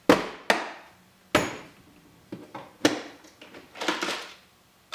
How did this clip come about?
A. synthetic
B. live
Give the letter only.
B